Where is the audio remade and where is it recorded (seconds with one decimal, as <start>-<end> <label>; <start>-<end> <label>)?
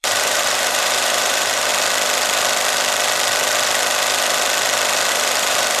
0.0-1.7 remade; 1.7-5.1 recorded; 5.1-5.8 remade